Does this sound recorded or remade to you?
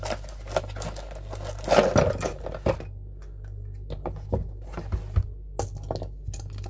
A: recorded